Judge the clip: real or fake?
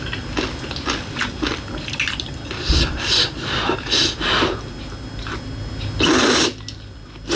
real